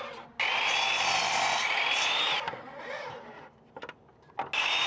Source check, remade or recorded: recorded